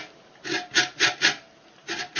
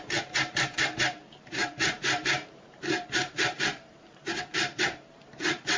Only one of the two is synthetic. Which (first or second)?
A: second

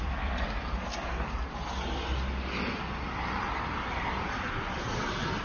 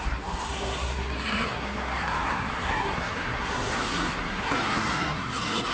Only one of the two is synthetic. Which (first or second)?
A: second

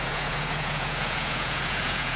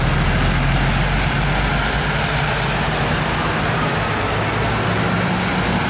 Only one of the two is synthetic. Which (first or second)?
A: first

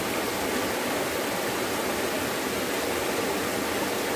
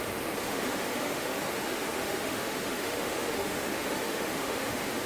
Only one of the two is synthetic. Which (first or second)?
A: second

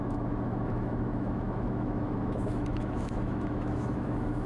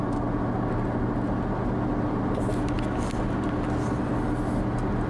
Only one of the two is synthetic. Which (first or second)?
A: first